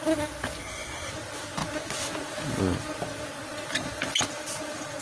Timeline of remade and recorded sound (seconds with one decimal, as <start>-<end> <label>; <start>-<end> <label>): 0.0-0.6 recorded; 0.6-1.1 remade; 1.1-5.0 recorded